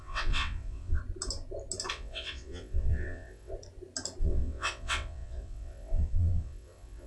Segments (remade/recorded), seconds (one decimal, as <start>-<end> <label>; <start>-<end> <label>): 0.0-1.0 remade; 1.0-1.9 recorded; 1.9-3.5 remade; 3.5-4.2 recorded; 4.2-7.1 remade